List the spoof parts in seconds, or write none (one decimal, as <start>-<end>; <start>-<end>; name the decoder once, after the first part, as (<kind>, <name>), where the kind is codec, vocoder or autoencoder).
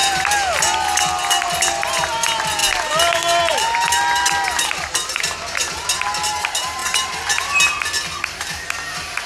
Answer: none